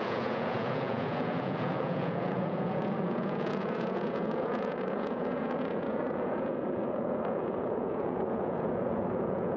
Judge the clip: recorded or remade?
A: remade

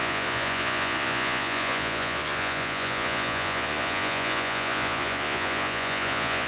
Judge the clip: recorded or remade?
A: remade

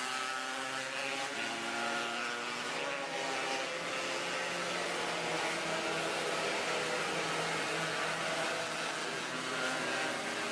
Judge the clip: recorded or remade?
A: recorded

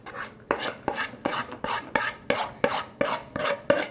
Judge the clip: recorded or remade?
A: recorded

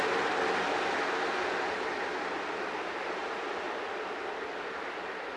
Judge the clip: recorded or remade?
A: recorded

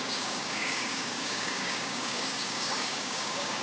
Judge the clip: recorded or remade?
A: remade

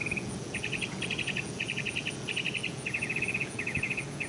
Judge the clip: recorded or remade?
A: remade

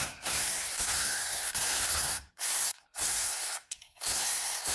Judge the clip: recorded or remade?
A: remade